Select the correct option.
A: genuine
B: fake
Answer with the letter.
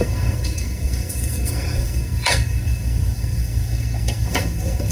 B